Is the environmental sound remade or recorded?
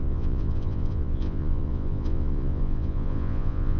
remade